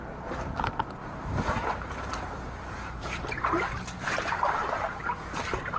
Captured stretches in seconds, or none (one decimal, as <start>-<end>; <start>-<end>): 0.0-1.0; 4.5-5.8